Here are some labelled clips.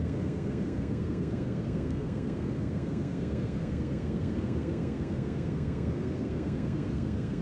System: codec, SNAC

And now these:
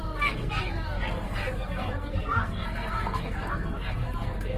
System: codec, SNAC